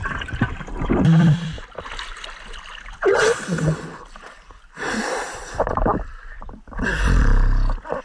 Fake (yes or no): yes